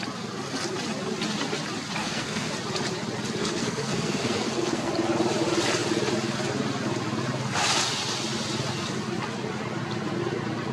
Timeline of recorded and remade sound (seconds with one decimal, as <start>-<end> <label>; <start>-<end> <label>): 0.0-2.0 recorded; 2.0-2.5 remade; 2.5-3.4 recorded; 3.4-4.9 remade; 4.9-10.7 recorded